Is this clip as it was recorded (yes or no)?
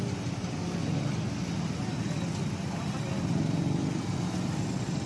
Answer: yes